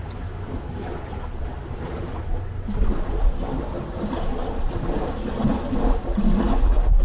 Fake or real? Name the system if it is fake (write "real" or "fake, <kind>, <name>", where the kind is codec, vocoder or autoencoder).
real